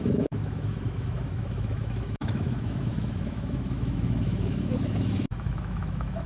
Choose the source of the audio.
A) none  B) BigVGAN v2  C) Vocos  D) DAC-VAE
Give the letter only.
D